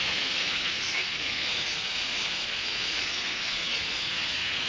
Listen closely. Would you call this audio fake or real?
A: fake